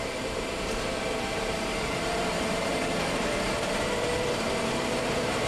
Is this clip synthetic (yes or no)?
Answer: yes